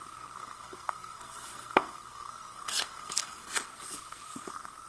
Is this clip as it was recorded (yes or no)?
no